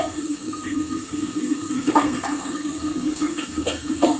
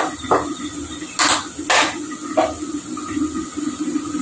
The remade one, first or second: first